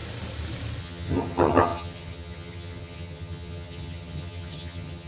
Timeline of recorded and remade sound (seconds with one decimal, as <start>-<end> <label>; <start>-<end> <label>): 0.0-0.8 recorded; 0.8-5.1 remade